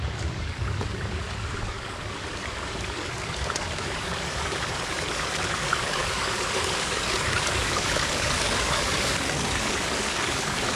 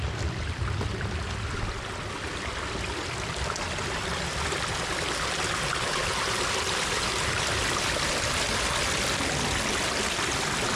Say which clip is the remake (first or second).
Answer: first